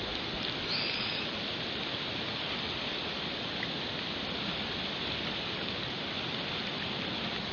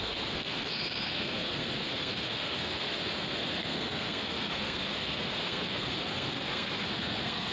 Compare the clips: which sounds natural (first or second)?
first